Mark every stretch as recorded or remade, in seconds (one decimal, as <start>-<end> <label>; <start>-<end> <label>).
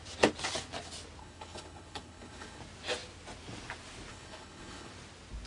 0.0-1.2 recorded; 1.2-2.6 remade; 2.6-4.1 recorded; 4.1-4.9 remade; 4.9-5.5 recorded